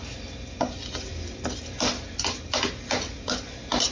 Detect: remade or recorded recorded